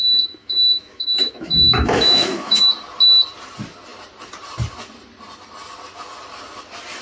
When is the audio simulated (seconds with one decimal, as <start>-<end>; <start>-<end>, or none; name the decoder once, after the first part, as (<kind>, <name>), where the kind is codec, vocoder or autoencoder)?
0.4-2.6 (autoencoder, DAC-VAE)